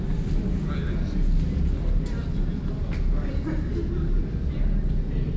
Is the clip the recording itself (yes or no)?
yes